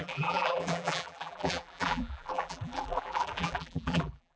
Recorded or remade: remade